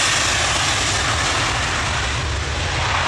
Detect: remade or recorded recorded